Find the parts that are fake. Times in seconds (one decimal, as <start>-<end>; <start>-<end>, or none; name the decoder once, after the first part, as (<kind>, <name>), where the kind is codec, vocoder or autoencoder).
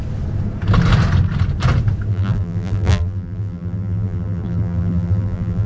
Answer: 2.1-5.7 (vocoder, BigVGAN v2)